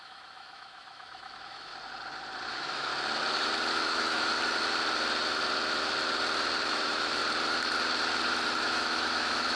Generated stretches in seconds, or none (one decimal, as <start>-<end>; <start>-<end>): 0.0-1.7; 2.5-2.9; 3.7-4.3; 6.7-7.2; 8.6-9.6